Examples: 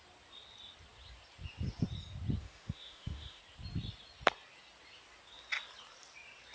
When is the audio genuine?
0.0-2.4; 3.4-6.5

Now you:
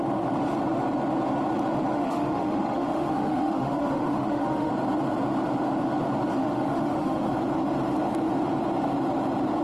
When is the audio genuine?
0.0-1.9; 4.7-6.4; 7.3-9.6

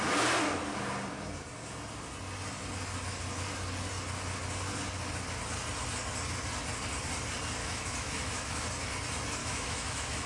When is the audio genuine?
0.0-7.6; 8.6-9.4

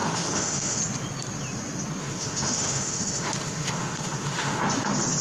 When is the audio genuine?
0.8-2.0; 4.6-5.2

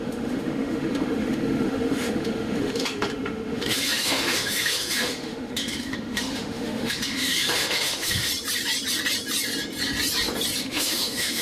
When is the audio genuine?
8.3-10.6

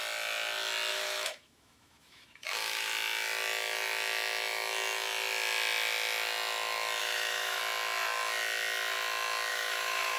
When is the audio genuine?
0.0-0.9; 2.9-7.0; 7.6-9.5

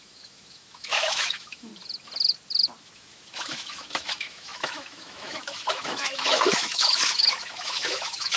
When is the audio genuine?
1.7-2.8

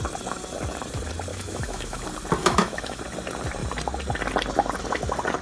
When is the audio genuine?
0.0-1.3; 2.0-2.4; 3.0-5.4